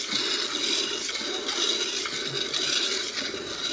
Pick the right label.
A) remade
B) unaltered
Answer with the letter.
B